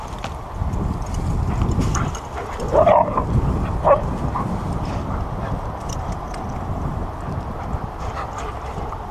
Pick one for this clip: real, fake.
fake